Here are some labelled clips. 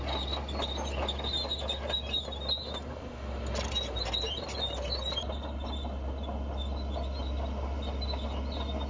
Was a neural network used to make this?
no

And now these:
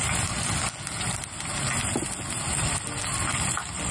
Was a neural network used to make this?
no